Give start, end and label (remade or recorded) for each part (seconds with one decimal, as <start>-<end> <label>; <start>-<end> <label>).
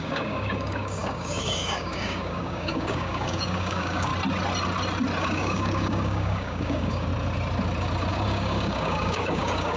0.0-4.1 remade; 4.1-5.2 recorded; 5.2-7.1 remade; 7.1-8.1 recorded; 8.1-9.8 remade